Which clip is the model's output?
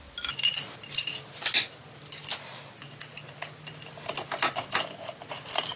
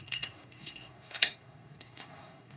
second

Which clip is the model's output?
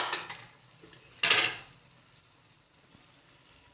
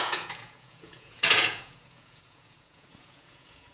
second